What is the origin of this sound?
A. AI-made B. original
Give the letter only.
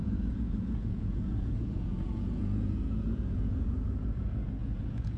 A